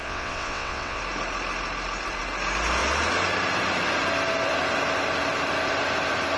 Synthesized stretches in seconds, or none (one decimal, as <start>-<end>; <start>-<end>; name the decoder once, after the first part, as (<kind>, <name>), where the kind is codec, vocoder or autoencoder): 0.0-1.0 (vocoder, WaveNeXt)

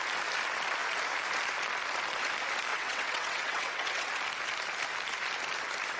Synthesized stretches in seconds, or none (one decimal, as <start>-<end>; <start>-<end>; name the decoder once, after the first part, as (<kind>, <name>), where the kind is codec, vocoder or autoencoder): 2.7-4.1 (vocoder, WaveNeXt)

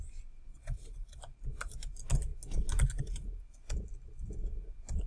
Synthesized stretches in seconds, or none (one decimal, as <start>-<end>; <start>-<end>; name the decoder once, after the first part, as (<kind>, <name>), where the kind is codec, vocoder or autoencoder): 0.5-1.2 (vocoder, WaveNeXt)

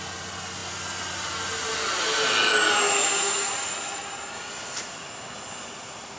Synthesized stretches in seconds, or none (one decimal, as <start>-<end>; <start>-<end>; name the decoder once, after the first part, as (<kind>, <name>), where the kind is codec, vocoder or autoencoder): none

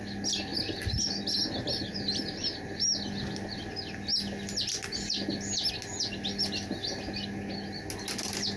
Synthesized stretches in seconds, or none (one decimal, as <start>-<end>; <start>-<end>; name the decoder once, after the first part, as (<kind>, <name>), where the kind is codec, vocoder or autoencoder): none

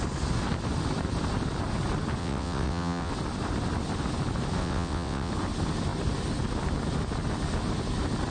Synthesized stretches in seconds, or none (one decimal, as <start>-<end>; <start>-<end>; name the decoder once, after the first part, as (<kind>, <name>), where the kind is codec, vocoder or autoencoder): 2.2-3.1 (vocoder, WaveNeXt); 4.6-5.3

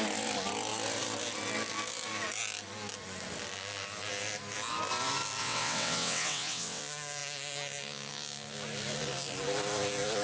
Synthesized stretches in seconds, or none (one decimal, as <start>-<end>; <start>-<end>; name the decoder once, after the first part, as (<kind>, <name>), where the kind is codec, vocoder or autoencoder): 5.4-6.8 (vocoder, WaveNeXt)